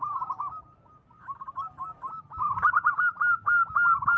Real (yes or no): yes